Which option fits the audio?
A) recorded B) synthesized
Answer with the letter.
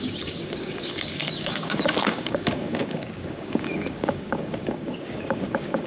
B